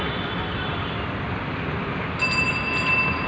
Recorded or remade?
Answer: recorded